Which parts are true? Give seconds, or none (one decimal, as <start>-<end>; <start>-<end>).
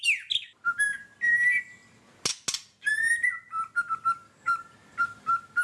0.0-5.6